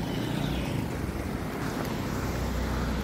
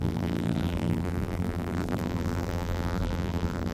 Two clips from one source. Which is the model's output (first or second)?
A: second